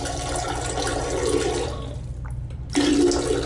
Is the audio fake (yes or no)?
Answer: no